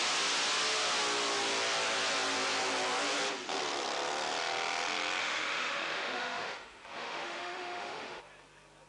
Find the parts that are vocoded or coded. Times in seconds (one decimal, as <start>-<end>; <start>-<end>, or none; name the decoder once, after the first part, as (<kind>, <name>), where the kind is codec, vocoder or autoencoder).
5.2-8.2 (autoencoder, DAC-VAE)